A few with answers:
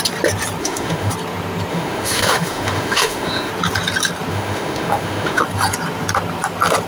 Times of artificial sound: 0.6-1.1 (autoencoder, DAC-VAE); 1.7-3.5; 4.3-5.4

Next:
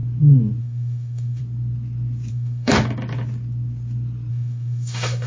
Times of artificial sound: 0.6-1.4 (autoencoder, DAC-VAE); 2.3-2.7; 4.3-5.3

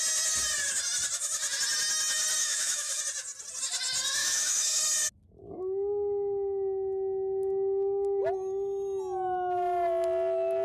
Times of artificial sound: 2.4-3.0 (autoencoder, DAC-VAE); 4.2-4.8; 5.4-8.2

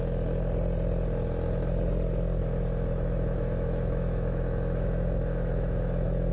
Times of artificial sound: 2.4-6.3 (autoencoder, DAC-VAE)

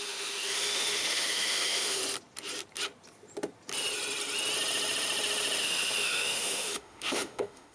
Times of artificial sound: 0.0-2.0 (autoencoder, DAC-VAE); 5.6-7.7

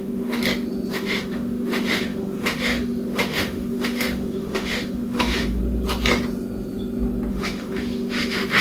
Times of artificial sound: 0.0-0.4 (autoencoder, DAC-VAE); 0.9-5.6; 7.3-8.6